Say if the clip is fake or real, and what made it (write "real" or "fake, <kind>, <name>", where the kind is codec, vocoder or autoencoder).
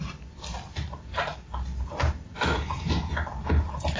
real